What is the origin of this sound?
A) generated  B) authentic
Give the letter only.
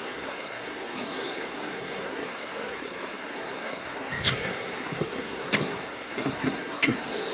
A